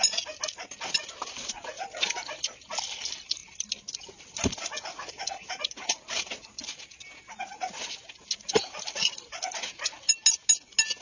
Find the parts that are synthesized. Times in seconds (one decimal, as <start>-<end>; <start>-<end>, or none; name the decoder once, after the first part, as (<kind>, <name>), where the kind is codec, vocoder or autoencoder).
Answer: none